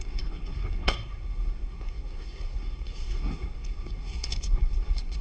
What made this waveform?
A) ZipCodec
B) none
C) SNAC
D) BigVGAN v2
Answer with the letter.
C